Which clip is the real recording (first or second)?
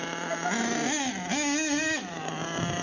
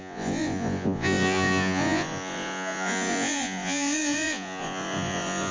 first